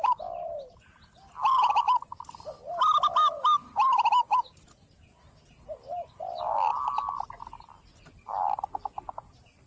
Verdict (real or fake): real